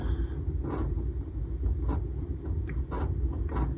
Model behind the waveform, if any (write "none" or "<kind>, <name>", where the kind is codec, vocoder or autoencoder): none